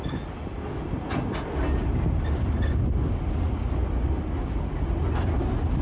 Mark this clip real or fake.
real